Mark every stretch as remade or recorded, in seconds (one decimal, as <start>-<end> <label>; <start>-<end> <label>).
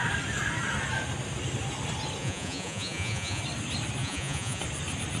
0.0-2.2 recorded; 2.2-3.4 remade; 3.4-4.0 recorded; 4.0-4.6 remade; 4.6-5.2 recorded